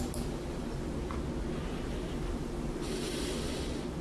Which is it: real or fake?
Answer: real